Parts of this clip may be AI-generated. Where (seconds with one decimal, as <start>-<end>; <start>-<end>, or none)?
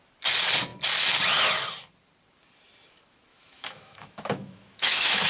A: 3.3-5.3